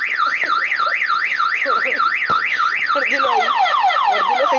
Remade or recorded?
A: recorded